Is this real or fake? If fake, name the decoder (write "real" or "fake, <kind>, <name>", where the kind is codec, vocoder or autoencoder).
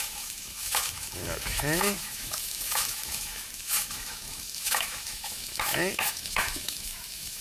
fake, autoencoder, DAC-VAE